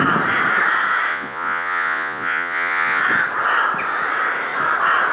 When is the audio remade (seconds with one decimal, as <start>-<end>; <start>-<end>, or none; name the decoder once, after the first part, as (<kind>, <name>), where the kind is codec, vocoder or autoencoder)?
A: 1.1-3.0 (vocoder, Vocos)